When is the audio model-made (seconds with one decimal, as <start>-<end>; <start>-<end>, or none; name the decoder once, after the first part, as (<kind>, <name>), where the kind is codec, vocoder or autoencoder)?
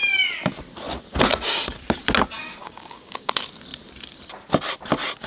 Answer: 2.6-3.3 (codec, DAC)